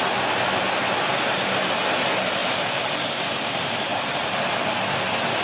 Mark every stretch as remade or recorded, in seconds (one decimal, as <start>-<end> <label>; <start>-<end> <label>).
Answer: 0.0-3.9 recorded; 3.9-4.6 remade; 4.6-5.4 recorded